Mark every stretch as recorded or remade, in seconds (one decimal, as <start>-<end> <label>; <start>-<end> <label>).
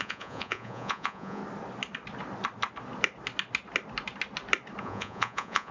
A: 0.0-1.4 remade; 1.4-4.8 recorded; 4.8-5.7 remade